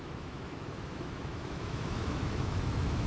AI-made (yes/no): yes